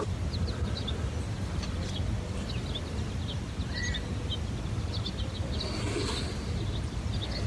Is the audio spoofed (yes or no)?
no